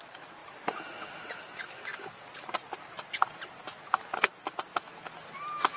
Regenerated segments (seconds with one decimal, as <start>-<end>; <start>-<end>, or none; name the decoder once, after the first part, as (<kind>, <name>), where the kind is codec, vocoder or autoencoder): 0.4-1.4 (vocoder, BigVGAN v2)